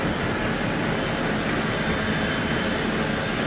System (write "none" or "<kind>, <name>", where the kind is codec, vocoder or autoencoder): none